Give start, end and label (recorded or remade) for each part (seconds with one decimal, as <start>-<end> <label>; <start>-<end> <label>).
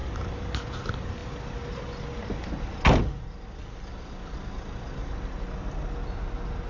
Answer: 0.0-6.7 recorded